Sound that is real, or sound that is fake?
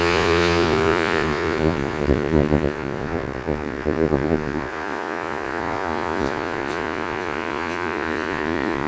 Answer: fake